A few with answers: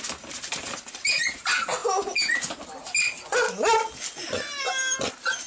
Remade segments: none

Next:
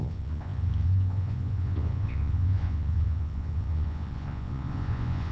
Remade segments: 0.0-5.3 (vocoder, Vocos)

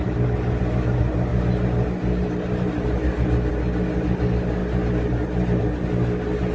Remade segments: none

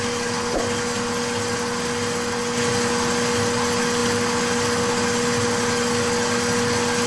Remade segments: none

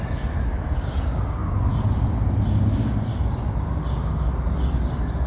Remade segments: none